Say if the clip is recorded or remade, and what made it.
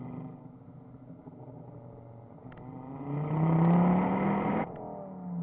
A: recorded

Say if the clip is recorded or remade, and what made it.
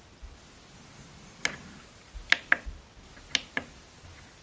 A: recorded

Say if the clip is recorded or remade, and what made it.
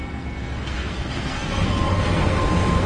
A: remade, codec, SNAC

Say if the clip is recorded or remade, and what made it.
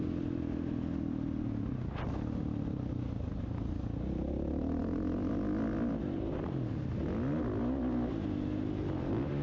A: recorded